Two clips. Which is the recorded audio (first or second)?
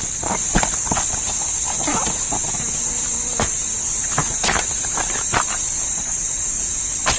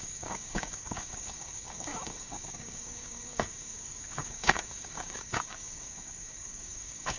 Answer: first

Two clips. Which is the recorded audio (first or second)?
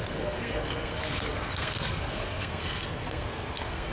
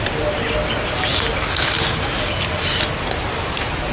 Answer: second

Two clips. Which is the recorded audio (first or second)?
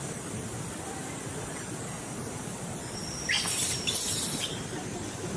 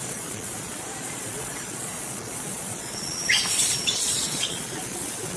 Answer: first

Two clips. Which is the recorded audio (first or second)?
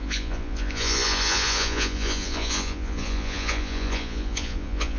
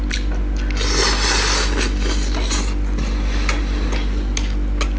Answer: second